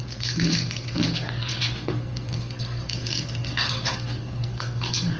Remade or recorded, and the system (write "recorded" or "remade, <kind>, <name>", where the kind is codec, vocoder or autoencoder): remade, codec, SNAC